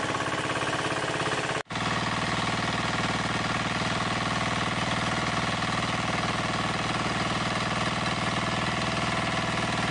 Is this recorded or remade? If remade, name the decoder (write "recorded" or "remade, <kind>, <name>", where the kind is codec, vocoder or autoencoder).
recorded